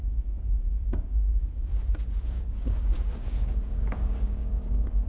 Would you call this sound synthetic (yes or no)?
yes